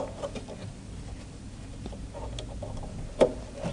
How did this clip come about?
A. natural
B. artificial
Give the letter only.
A